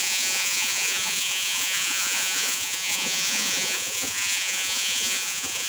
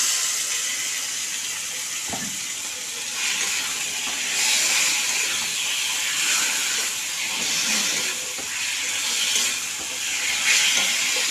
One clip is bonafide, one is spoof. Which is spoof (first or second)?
first